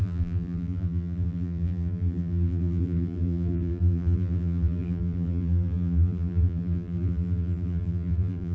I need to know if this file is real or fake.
fake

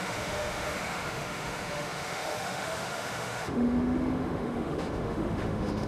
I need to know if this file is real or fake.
fake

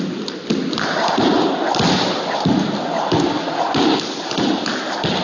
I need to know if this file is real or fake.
real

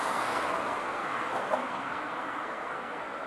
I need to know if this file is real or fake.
fake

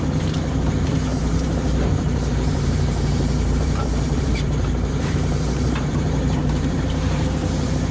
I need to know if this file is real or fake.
fake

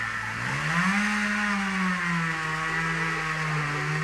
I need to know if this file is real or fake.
real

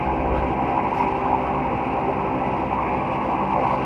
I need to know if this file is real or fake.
real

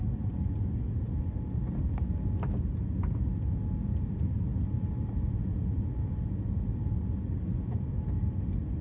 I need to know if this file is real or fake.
real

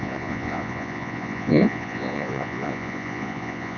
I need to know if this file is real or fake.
fake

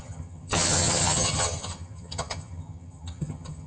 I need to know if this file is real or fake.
fake